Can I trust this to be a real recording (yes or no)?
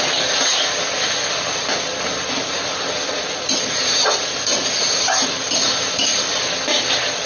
yes